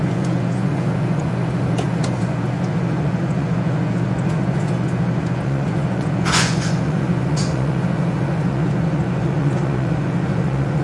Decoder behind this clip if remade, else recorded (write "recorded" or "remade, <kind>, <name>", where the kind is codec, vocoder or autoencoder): remade, vocoder, Vocos